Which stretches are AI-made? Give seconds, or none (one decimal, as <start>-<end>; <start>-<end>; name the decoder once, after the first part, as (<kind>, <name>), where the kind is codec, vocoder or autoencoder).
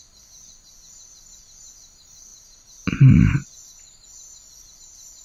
none